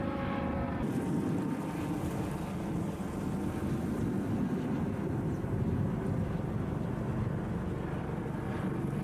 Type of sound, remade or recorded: recorded